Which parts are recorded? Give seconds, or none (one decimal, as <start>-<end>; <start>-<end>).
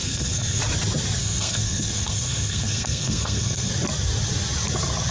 0.6-1.2; 3.7-5.1